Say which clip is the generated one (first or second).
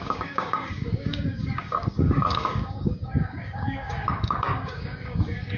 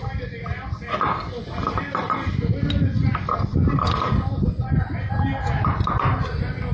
first